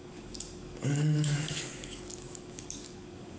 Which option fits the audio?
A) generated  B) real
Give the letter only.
A